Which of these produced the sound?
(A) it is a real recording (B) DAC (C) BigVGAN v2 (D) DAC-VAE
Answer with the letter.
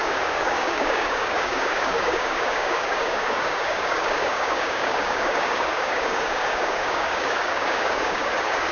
B